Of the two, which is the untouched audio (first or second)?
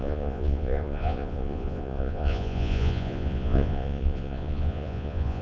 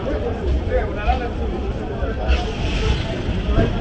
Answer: second